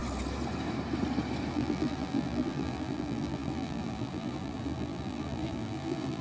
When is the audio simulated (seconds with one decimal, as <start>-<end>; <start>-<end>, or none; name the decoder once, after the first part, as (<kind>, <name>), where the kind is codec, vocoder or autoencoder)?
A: 1.5-6.2 (vocoder, BigVGAN v2)

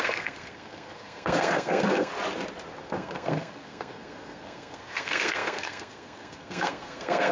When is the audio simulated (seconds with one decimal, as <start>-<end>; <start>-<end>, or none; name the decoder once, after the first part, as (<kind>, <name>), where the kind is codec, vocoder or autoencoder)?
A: 0.0-2.1 (codec, SNAC); 2.8-7.3

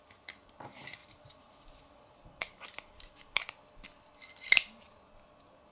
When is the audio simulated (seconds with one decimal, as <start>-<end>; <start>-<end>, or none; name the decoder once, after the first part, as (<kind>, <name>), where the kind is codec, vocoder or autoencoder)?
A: 1.0-3.4 (vocoder, BigVGAN v2)

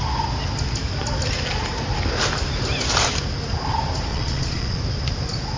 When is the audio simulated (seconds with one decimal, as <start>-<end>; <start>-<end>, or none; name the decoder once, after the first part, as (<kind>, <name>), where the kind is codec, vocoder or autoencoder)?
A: 4.1-4.8 (vocoder, Vocos)